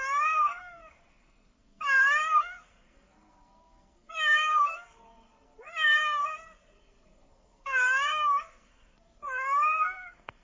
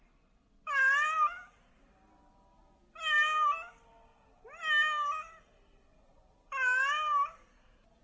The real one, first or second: second